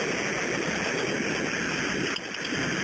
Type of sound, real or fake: real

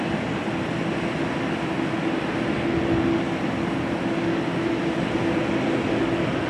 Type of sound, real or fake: real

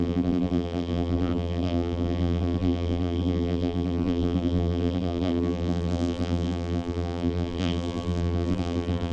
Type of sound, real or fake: fake